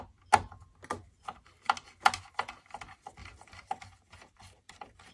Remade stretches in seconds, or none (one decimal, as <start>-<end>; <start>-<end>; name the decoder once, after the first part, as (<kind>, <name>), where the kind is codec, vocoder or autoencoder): 3.2-5.1 (vocoder, BigVGAN v2)